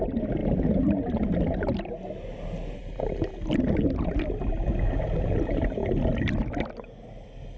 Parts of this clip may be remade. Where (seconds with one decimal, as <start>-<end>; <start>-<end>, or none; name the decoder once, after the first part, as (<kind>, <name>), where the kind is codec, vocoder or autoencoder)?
none